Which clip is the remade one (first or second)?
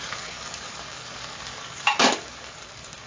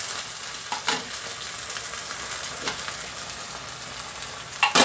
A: first